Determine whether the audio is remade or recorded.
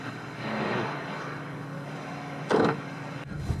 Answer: remade